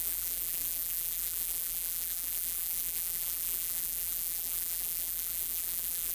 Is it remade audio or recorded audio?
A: remade